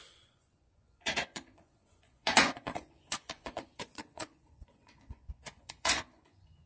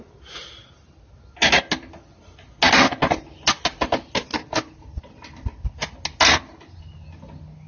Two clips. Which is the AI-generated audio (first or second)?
first